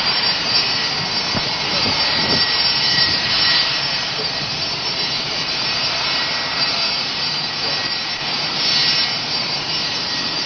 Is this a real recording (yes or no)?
no